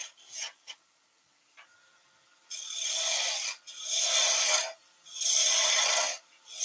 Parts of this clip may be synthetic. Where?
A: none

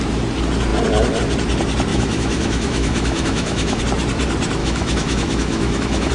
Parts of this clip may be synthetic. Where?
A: 1.9-3.8 (autoencoder, DAC-VAE); 4.6-6.1

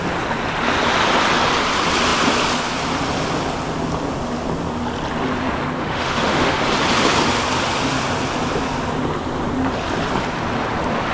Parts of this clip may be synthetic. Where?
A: 5.8-6.6 (autoencoder, DAC-VAE)

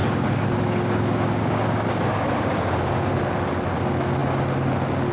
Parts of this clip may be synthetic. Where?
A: 0.0-3.1 (codec, DAC)